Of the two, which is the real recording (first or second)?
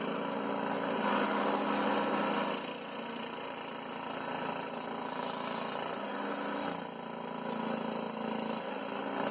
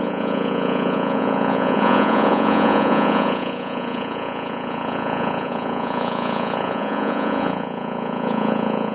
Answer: first